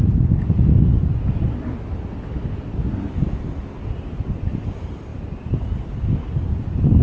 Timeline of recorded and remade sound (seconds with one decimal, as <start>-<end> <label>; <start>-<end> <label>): 0.0-7.0 recorded